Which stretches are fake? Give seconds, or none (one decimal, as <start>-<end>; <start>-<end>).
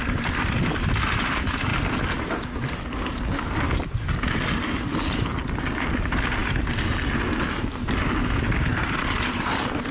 8.7-9.9